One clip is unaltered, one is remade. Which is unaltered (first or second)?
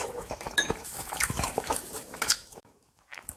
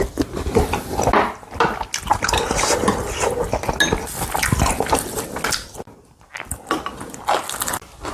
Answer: second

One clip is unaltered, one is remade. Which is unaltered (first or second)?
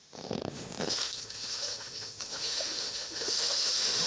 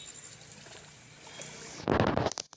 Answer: second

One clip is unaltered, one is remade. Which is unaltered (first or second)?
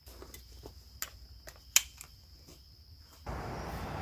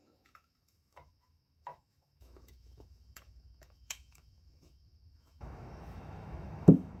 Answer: first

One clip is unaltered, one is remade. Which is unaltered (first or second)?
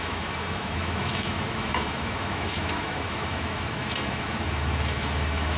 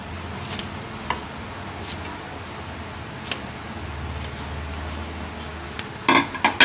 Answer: second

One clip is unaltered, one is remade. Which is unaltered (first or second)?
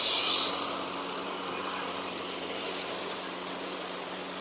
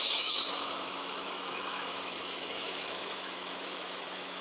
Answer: first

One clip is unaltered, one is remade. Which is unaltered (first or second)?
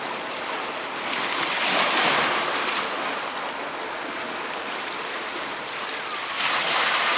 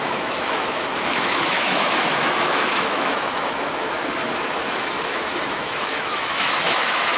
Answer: first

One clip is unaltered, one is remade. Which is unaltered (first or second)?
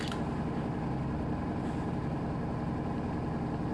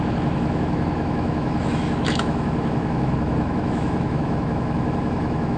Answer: first